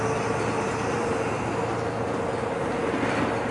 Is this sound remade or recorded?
recorded